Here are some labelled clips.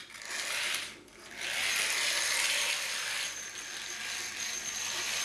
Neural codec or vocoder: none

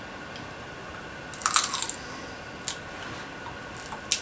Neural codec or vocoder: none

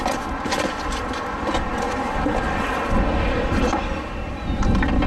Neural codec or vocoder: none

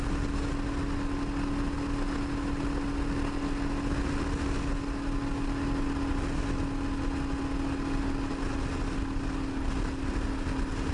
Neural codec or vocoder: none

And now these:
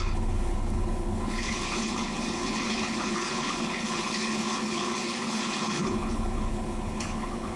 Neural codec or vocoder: codec, HILCodec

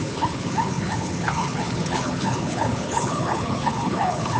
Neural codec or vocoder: codec, HILCodec